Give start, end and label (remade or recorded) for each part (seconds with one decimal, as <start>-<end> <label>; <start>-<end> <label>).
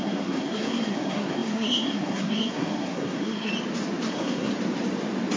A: 0.0-3.5 remade; 3.5-4.1 recorded; 4.1-4.5 remade; 4.5-5.4 recorded